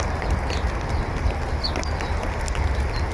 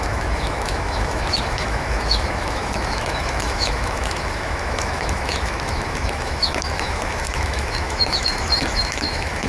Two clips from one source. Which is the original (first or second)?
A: first